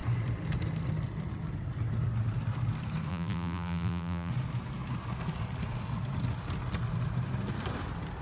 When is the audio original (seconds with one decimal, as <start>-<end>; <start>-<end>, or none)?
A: 0.0-3.1; 4.3-8.2